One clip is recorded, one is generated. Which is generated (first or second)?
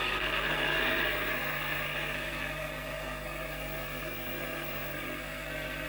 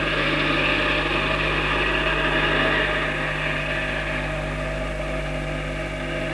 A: first